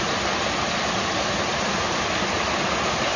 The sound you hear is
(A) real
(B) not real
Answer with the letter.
A